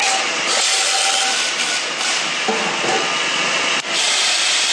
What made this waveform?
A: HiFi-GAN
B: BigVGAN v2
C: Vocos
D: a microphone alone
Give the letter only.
B